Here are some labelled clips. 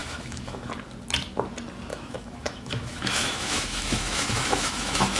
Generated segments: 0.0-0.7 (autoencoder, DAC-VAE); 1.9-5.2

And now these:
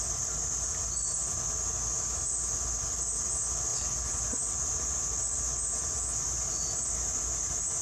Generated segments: none

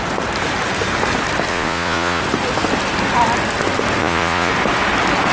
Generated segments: 1.5-2.2 (vocoder, Vocos); 4.0-4.5